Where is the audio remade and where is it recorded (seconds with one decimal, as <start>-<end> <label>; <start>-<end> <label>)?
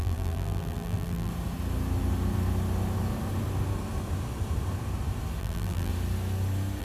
0.0-1.3 remade; 1.3-5.4 recorded; 5.4-5.9 remade; 5.9-6.8 recorded